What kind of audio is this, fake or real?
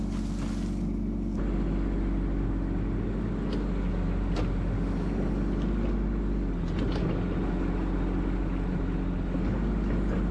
real